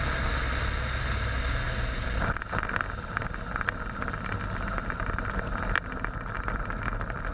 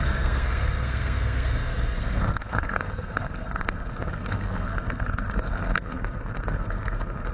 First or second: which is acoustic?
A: first